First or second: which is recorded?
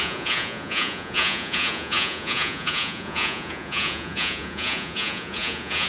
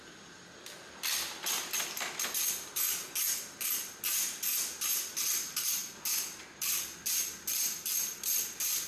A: second